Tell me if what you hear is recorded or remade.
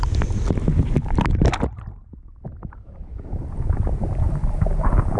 recorded